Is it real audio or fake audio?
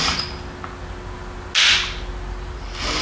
real